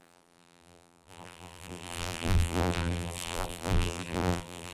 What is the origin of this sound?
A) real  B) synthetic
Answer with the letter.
B